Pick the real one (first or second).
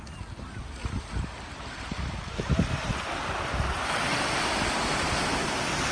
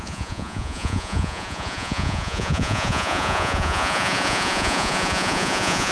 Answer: first